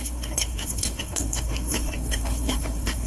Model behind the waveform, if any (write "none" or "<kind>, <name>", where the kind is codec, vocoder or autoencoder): codec, SNAC